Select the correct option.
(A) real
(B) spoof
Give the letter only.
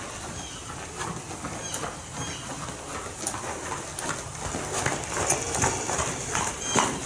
A